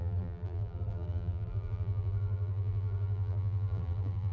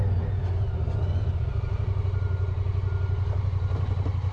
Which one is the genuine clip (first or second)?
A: second